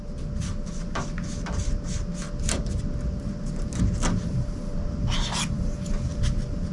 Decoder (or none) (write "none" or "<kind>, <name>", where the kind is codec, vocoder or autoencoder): none